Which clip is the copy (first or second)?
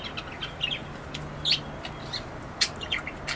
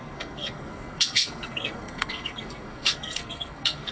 second